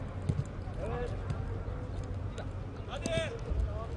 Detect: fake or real real